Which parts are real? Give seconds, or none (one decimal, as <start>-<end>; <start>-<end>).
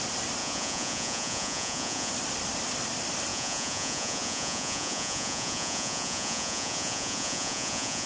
0.0-0.4; 2.1-3.3